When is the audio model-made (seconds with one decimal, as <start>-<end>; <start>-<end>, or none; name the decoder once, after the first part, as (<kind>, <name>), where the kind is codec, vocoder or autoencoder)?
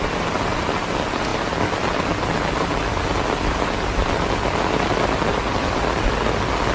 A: none